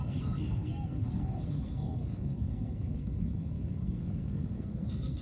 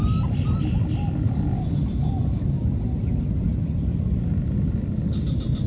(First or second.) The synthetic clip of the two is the first